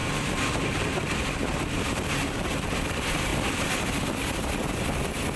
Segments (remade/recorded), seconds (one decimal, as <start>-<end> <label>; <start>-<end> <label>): 0.0-3.3 remade; 3.3-5.4 recorded